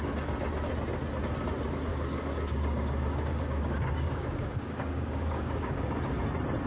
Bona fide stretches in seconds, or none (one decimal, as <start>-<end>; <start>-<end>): 0.0-1.9; 5.9-6.7